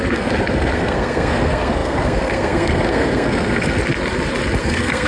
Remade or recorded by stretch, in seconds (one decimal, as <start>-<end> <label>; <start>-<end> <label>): 0.0-3.8 remade; 3.8-4.6 recorded; 4.6-5.1 remade